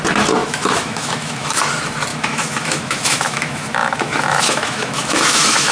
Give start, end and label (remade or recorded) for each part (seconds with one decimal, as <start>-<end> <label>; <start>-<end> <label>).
0.0-0.4 recorded; 0.4-1.6 remade; 1.6-2.1 recorded; 2.1-5.7 remade